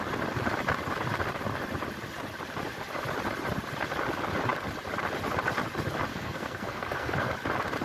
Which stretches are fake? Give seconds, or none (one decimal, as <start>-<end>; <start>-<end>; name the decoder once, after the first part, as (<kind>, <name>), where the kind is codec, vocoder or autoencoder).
6.1-7.3 (codec, SNAC)